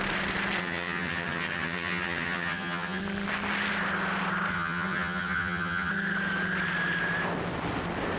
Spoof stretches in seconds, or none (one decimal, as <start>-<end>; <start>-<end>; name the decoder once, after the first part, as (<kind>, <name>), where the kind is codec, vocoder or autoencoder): 0.6-3.0 (vocoder, HiFi-GAN); 4.5-5.9